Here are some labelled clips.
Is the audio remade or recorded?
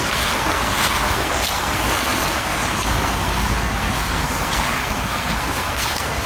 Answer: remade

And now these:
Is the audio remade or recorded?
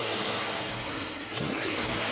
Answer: remade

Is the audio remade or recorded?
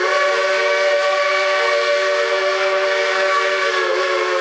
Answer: remade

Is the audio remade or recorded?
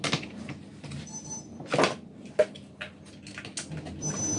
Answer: recorded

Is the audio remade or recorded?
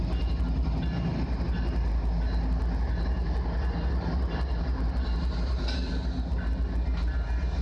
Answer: recorded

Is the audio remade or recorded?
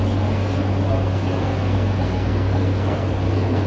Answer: remade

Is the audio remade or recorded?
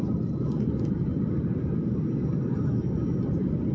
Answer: recorded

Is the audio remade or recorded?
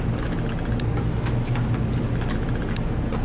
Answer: recorded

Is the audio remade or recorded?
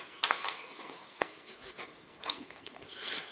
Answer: remade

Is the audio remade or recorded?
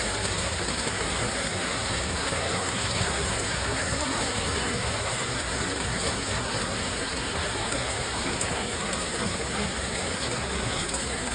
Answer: remade